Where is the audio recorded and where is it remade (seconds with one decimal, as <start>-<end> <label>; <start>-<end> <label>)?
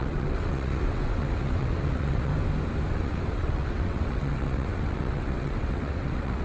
0.0-2.3 remade; 2.3-2.9 recorded; 2.9-6.4 remade